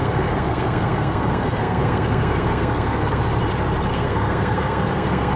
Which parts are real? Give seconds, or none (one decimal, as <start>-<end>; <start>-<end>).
3.2-3.9